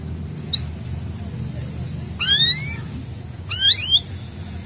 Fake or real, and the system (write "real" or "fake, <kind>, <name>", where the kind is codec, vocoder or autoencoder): real